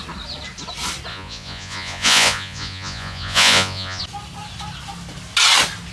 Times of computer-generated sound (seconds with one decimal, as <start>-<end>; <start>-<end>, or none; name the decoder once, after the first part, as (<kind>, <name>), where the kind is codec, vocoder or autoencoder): 1.1-4.0 (vocoder, Vocos)